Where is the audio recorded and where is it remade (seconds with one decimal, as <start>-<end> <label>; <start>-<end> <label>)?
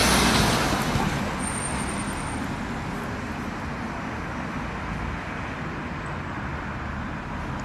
0.0-7.6 recorded